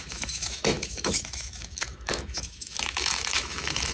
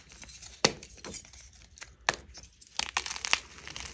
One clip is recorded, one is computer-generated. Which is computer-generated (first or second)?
first